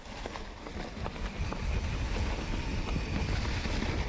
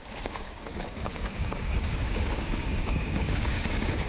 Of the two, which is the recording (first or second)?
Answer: first